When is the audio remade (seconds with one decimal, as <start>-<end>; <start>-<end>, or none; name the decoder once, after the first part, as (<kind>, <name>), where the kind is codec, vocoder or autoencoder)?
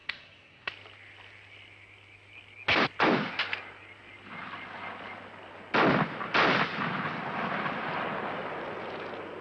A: 0.0-0.7 (codec, SNAC)